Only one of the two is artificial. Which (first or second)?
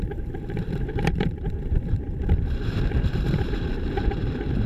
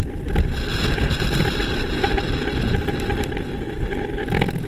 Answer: first